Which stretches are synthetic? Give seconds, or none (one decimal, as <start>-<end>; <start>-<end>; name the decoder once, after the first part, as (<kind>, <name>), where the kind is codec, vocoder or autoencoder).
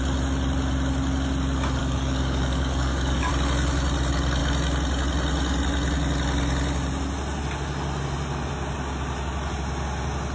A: 1.8-3.3 (codec, DAC)